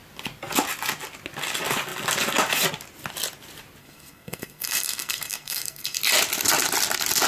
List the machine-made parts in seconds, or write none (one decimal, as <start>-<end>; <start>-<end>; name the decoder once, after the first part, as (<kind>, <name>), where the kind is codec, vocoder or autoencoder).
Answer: 3.8-6.0 (codec, SNAC)